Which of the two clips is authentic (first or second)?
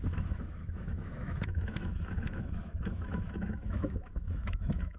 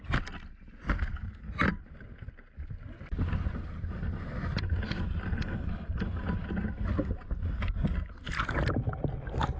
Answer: second